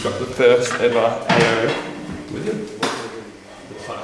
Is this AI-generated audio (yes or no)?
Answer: yes